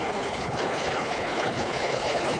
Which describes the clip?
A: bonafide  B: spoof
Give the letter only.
B